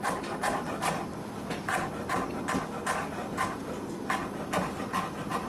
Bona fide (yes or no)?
yes